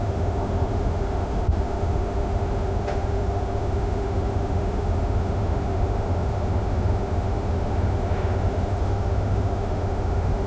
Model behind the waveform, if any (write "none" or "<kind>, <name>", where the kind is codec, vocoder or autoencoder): autoencoder, DAC-VAE